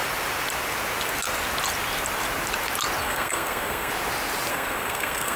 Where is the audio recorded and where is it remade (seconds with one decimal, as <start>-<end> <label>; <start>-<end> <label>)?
0.0-3.0 recorded; 3.0-3.9 remade; 3.9-4.5 recorded; 4.5-5.4 remade